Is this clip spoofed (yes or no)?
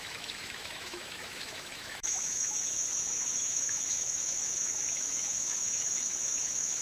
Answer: yes